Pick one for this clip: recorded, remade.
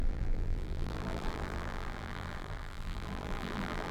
remade